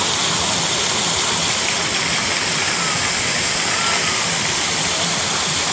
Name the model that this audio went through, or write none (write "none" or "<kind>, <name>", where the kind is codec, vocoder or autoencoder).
none